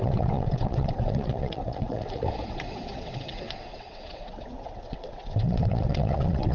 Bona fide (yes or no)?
no